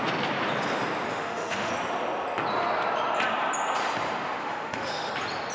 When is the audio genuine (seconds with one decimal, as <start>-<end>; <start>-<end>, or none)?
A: 0.0-1.1; 1.7-4.4; 5.1-5.5